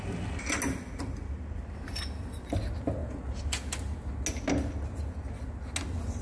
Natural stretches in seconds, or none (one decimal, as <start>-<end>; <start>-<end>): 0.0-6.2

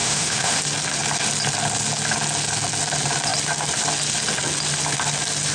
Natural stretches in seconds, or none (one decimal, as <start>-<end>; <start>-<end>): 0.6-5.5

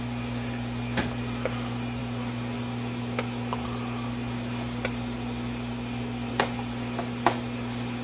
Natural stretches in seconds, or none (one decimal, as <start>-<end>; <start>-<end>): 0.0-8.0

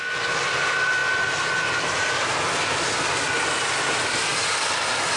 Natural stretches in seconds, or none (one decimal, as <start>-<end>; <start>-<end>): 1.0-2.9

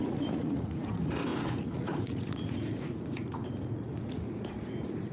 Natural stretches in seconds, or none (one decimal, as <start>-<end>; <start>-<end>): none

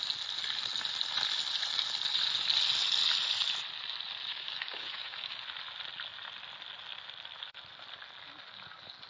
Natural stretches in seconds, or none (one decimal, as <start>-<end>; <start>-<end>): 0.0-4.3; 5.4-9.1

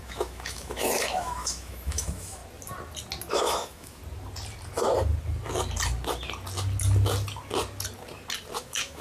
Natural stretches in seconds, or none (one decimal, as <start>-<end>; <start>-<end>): 2.4-3.3; 4.0-8.6

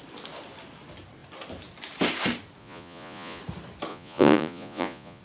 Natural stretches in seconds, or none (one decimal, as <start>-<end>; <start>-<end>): 0.0-2.6; 3.4-3.9